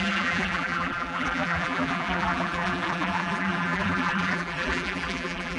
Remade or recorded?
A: remade